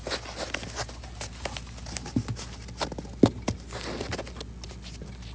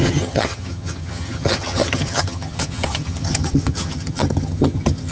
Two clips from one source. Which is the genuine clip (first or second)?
first